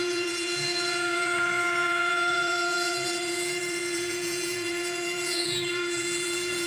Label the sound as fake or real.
fake